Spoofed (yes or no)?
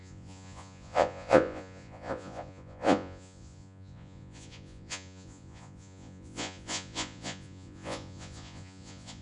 yes